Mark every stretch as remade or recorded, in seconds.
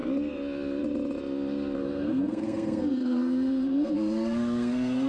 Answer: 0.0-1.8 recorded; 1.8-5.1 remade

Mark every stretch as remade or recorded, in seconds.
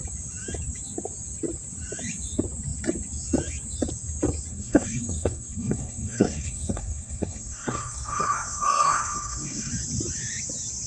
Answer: 0.0-4.5 recorded; 4.5-9.7 remade; 9.7-10.9 recorded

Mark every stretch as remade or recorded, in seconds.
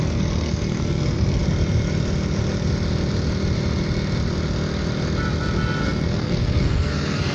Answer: 0.0-1.4 remade; 1.4-5.8 recorded; 5.8-7.3 remade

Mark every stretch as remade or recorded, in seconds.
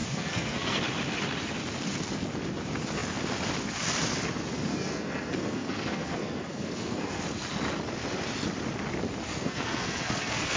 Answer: 0.0-0.8 remade; 0.8-4.7 recorded; 4.7-7.2 remade; 7.2-9.3 recorded; 9.3-10.6 remade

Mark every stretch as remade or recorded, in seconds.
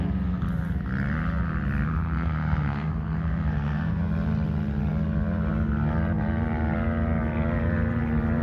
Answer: 0.0-1.9 recorded; 1.9-4.0 remade; 4.0-8.4 recorded